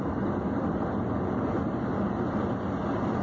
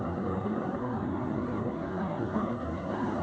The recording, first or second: first